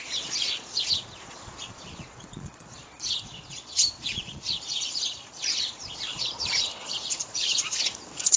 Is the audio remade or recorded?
remade